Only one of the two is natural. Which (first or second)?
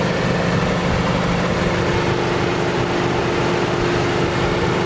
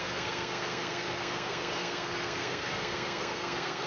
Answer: first